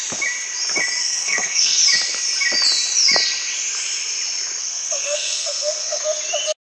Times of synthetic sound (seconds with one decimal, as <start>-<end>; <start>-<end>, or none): 1.0-1.8; 4.6-6.0